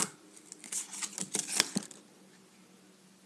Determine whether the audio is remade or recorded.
recorded